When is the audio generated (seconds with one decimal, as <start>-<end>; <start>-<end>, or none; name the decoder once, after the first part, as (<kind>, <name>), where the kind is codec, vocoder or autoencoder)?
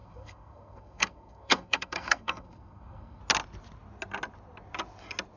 0.0-3.2 (codec, SNAC)